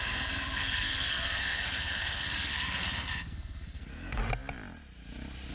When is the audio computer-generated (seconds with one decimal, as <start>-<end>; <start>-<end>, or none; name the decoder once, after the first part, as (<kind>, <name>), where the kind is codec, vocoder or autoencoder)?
0.0-4.2 (codec, SNAC)